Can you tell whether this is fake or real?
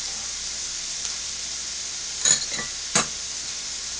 real